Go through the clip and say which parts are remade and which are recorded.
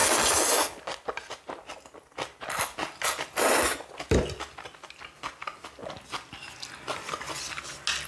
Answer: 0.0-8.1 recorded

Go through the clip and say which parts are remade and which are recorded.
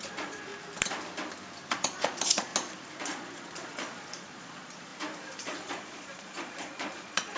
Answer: 0.0-0.5 remade; 0.5-1.7 recorded; 1.7-2.5 remade; 2.5-3.0 recorded; 3.0-4.9 remade; 4.9-5.4 recorded; 5.4-7.4 remade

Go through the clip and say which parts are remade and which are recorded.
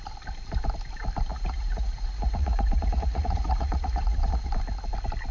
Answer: 0.0-1.3 recorded; 1.3-4.5 remade; 4.5-5.3 recorded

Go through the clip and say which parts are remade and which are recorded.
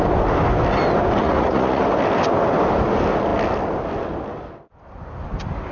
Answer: 0.0-1.2 recorded; 1.2-1.8 remade; 1.8-5.7 recorded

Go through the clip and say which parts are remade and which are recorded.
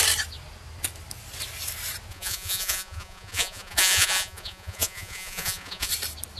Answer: 0.0-2.1 recorded; 2.1-5.9 remade; 5.9-6.4 recorded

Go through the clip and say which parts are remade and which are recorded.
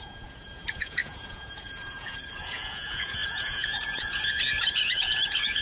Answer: 0.0-5.6 remade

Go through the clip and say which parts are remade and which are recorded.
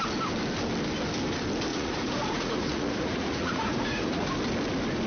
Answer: 0.0-1.7 recorded; 1.7-4.3 remade; 4.3-5.1 recorded